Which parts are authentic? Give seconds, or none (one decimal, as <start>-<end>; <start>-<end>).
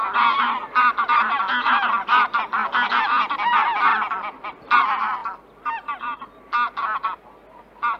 0.0-3.9; 4.6-8.0